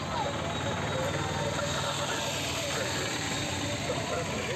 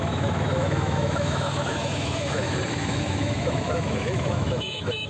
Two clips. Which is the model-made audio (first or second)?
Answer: second